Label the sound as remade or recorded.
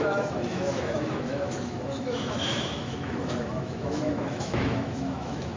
remade